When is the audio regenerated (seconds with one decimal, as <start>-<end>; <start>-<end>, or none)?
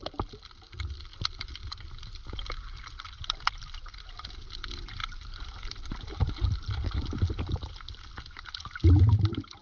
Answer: 5.0-5.7